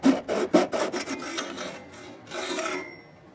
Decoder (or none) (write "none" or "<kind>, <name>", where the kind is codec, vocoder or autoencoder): none